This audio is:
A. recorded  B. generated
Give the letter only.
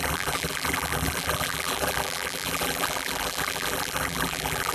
B